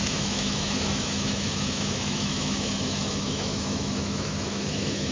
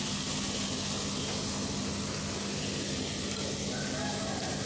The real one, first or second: second